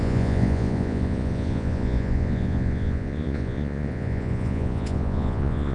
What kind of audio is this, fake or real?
fake